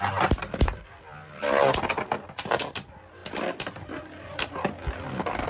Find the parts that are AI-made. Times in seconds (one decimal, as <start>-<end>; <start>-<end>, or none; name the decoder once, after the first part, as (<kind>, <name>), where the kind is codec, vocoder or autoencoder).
none